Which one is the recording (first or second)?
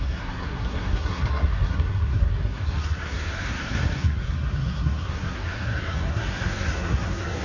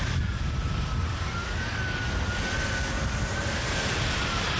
second